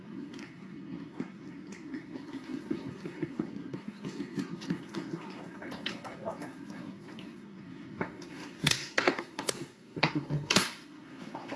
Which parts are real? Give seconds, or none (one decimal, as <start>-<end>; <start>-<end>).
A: none